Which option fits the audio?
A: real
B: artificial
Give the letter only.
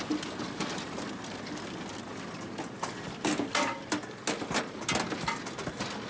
A